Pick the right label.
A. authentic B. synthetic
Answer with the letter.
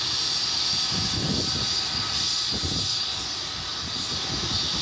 A